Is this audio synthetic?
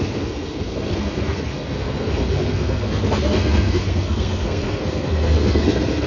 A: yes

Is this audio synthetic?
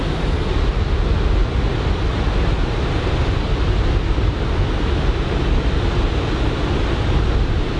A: no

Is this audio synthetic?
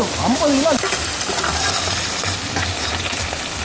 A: no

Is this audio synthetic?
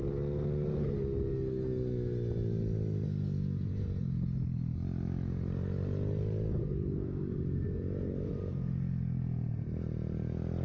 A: no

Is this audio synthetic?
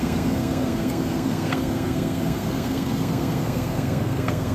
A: yes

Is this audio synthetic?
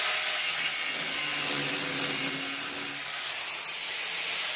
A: no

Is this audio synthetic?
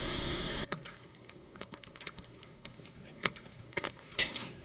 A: yes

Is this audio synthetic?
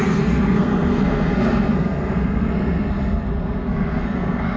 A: yes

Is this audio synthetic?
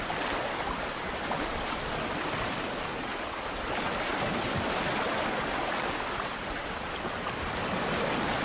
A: no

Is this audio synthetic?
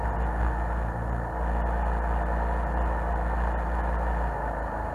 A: no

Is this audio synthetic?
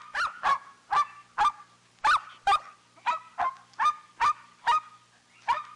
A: no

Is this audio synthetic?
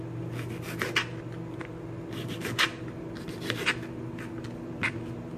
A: no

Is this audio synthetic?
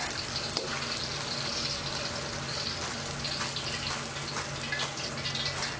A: no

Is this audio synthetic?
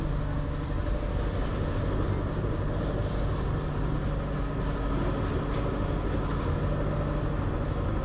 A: no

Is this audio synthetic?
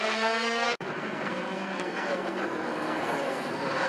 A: yes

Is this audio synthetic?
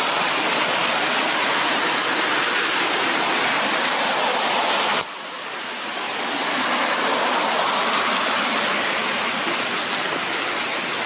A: no